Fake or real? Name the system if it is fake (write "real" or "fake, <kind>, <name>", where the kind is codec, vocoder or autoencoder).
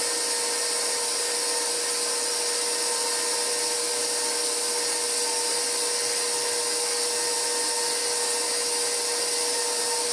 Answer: real